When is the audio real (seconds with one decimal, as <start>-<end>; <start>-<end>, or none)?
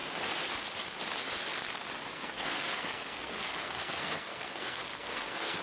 0.0-2.1